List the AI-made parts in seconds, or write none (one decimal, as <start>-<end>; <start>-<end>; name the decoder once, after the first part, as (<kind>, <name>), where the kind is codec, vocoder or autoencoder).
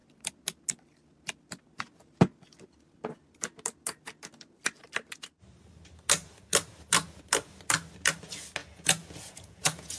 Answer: 8.6-10.0 (vocoder, Vocos)